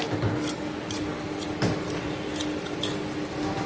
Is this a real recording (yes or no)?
yes